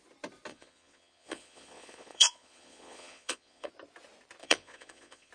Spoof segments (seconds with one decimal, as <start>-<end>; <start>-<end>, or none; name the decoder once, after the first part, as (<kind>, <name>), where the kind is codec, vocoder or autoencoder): 0.5-3.7 (vocoder, Vocos); 4.4-5.3